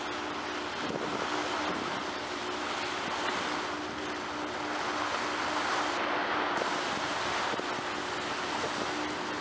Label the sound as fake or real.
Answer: real